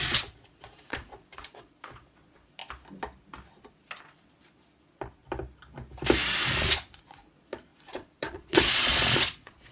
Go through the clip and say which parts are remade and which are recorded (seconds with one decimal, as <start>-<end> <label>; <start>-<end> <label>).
0.0-2.6 remade; 2.6-4.0 recorded; 4.0-5.2 remade; 5.2-6.6 recorded; 6.6-9.7 remade